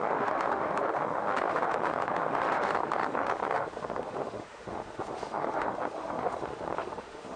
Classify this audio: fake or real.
fake